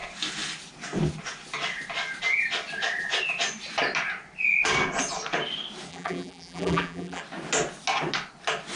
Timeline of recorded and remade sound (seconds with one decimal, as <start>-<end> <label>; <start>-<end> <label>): 0.0-5.9 recorded; 5.9-7.2 remade; 7.2-8.8 recorded